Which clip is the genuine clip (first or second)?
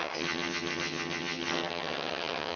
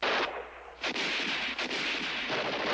second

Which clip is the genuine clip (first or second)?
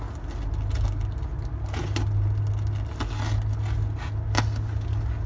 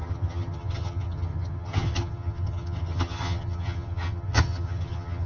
first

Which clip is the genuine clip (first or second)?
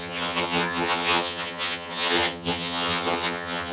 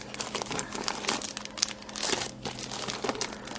second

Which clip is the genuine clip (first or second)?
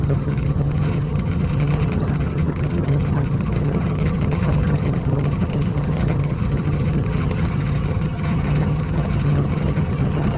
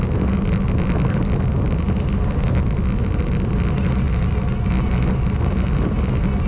second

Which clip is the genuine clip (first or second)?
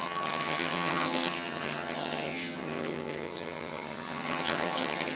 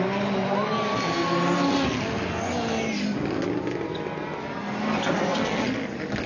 second